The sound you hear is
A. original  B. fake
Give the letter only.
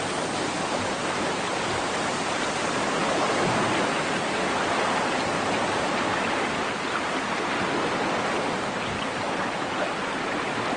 A